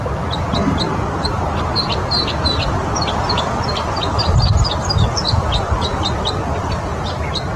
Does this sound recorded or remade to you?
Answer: recorded